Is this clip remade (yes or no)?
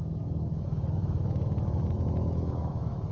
yes